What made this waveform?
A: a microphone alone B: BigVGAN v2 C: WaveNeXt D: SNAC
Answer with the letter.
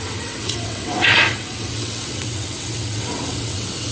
C